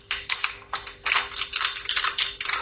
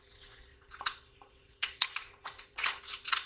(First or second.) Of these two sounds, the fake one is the second